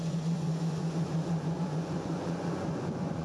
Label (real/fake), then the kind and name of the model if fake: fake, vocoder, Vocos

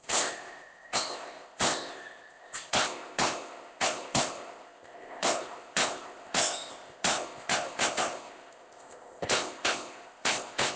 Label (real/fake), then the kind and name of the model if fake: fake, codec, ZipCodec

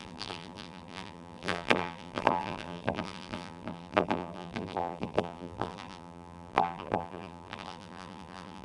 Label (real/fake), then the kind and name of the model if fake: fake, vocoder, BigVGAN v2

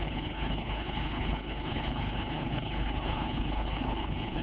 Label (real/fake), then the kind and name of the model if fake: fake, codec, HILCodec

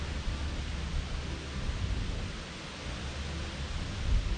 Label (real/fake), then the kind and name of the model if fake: real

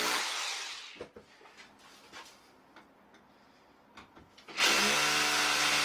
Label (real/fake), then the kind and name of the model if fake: real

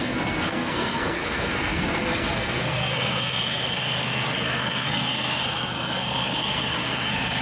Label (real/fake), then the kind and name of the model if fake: fake, codec, SNAC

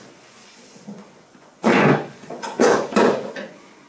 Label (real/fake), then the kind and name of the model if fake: fake, vocoder, Vocos